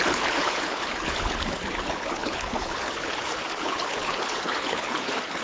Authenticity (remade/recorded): remade